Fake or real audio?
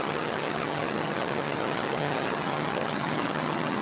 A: fake